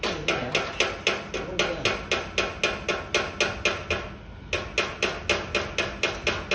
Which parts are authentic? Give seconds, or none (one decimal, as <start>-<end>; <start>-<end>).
0.0-6.5